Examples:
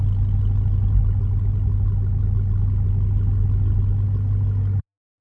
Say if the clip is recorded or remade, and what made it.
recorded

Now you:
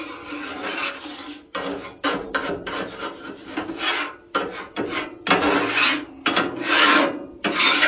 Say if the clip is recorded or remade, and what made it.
recorded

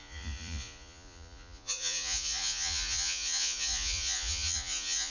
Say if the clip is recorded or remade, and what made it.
remade, vocoder, Vocos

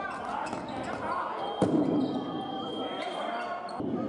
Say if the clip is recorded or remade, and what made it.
recorded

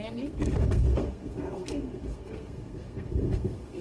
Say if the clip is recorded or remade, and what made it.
remade, codec, SNAC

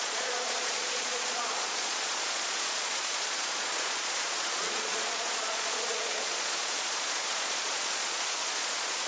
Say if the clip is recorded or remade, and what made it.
remade, vocoder, Vocos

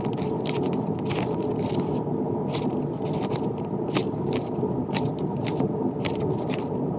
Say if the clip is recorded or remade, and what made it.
recorded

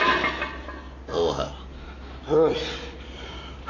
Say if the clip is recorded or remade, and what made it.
recorded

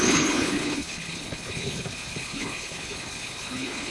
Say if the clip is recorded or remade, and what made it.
remade, codec, HILCodec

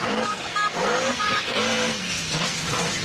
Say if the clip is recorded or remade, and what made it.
remade, codec, SNAC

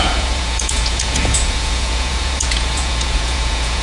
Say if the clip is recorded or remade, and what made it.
remade, vocoder, Vocos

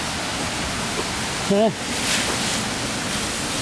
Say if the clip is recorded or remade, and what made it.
recorded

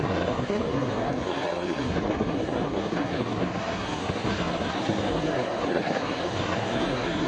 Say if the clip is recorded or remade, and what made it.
remade, codec, SNAC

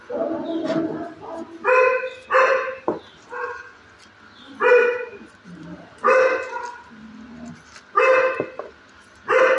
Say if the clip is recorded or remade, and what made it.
recorded